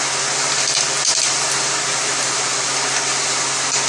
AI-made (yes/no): no